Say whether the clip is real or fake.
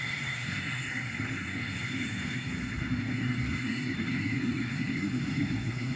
fake